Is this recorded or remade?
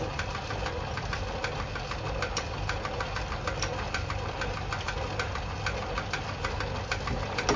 recorded